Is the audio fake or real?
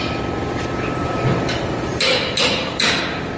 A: fake